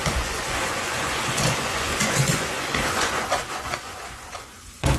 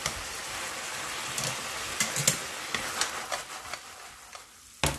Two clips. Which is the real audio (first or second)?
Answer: second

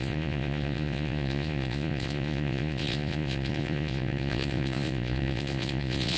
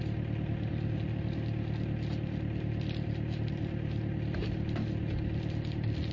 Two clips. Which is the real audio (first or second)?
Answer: second